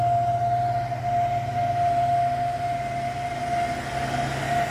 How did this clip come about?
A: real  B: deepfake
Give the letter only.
A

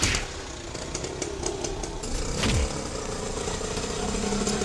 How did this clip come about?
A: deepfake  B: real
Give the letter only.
B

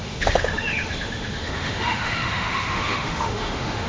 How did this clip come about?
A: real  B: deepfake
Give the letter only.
B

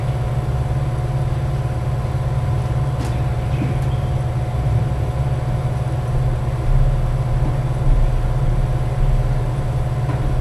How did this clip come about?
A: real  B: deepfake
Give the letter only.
A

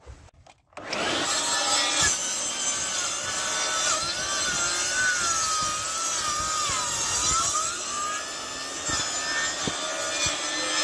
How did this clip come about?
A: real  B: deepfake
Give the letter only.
A